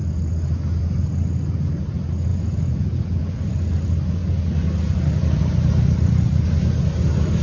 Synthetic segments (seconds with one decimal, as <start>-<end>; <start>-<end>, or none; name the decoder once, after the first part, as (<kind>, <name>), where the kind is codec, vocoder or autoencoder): 2.3-3.3 (vocoder, Vocos)